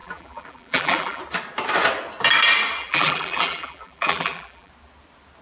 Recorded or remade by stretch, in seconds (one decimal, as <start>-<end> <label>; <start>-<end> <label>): 0.0-1.2 remade; 1.2-2.8 recorded; 2.8-4.7 remade; 4.7-5.4 recorded